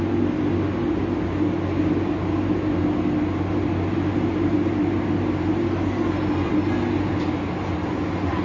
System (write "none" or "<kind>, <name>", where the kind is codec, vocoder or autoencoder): none